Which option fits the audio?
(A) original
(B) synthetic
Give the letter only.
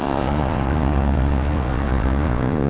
B